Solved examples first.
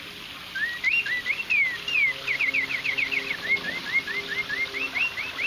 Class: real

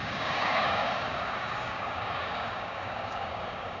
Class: fake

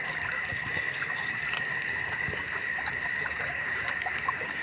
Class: fake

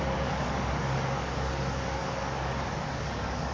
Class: fake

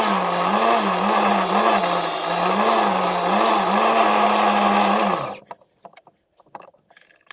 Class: real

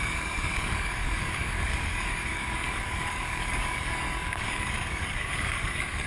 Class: fake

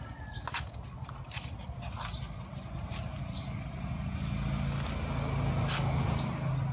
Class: real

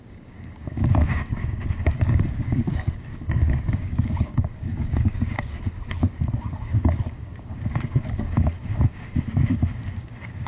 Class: fake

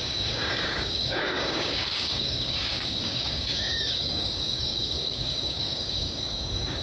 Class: fake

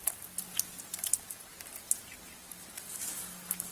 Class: real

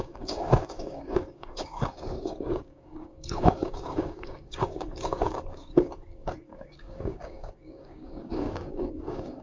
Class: fake